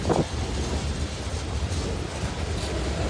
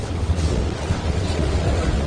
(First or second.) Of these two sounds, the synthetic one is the second